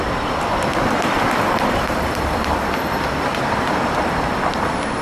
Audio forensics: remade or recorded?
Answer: remade